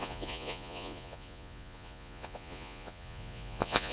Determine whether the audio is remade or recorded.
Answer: remade